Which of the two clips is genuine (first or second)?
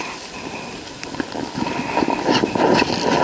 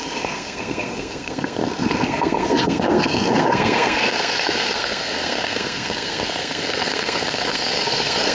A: first